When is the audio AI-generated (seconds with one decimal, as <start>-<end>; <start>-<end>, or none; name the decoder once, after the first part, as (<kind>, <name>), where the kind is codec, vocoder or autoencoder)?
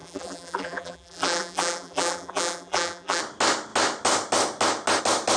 0.0-3.2 (vocoder, BigVGAN v2)